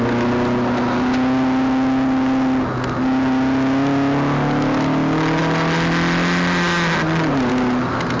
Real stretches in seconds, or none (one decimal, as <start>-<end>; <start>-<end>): 0.0-8.2